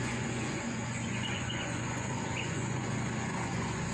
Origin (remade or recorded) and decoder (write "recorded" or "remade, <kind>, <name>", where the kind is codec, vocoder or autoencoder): remade, vocoder, Vocos